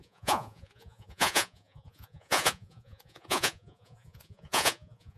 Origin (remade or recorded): remade